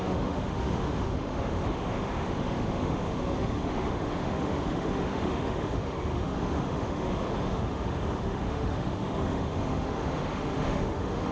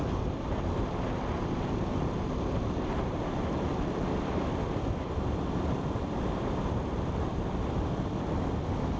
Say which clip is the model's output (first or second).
first